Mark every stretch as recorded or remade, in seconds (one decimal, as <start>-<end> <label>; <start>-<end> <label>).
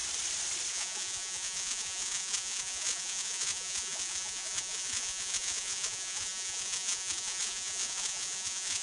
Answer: 0.0-0.7 recorded; 0.7-8.8 remade